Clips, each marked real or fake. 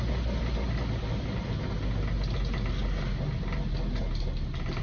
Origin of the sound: real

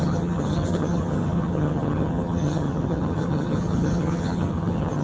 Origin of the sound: fake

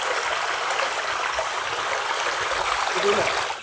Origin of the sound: real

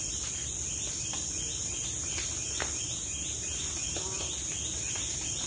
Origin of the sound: real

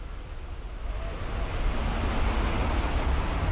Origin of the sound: real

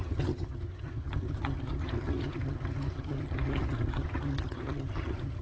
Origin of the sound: fake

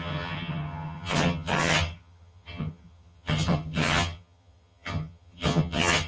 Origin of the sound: fake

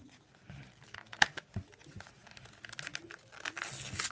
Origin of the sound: real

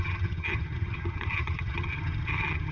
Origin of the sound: fake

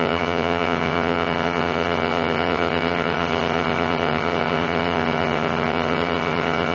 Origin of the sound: fake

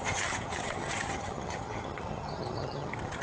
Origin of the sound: fake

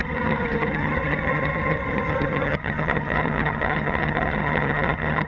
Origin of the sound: fake